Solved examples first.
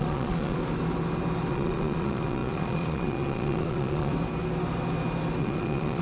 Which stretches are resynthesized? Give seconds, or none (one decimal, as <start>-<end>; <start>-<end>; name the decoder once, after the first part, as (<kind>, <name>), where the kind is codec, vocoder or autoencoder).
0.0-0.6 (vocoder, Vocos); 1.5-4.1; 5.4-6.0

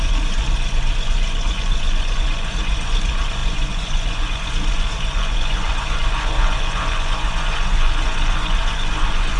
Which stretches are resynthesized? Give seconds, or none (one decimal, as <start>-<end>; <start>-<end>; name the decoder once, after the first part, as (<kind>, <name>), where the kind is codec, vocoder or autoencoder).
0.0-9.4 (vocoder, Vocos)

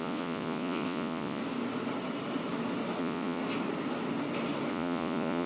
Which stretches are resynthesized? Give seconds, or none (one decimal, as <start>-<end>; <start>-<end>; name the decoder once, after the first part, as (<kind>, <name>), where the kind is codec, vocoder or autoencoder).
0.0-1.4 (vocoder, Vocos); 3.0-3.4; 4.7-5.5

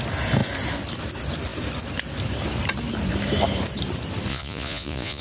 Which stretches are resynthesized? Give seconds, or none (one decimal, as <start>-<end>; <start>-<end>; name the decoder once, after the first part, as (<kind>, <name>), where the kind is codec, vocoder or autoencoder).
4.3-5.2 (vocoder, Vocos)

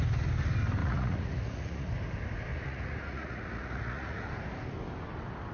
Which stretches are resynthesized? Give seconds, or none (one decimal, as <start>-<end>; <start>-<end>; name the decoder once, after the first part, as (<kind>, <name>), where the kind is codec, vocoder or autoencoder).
0.8-1.9 (vocoder, Vocos); 2.5-4.2

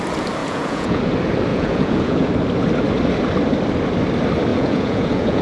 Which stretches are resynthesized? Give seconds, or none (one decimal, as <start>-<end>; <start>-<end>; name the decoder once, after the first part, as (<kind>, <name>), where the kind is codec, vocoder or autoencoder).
0.4-1.0 (vocoder, Vocos); 1.5-2.3; 4.5-5.4

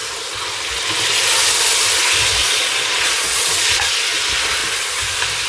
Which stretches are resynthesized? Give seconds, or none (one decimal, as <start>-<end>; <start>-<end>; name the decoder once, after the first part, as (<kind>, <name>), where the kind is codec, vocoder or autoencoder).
2.4-3.9 (vocoder, Vocos)

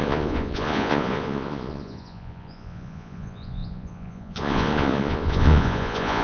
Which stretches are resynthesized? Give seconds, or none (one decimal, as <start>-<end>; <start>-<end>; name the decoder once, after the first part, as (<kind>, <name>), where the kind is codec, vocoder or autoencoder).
0.0-6.2 (vocoder, Vocos)